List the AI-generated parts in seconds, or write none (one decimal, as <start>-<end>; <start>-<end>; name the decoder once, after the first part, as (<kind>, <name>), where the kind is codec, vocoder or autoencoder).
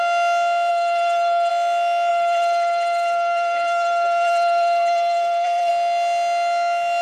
0.7-1.5 (vocoder, BigVGAN v2); 2.1-5.7